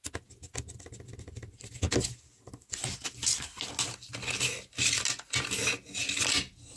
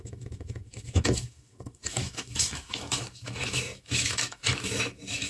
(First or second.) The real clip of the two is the first